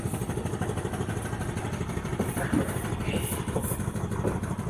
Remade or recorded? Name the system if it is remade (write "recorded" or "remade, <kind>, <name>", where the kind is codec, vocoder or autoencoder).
recorded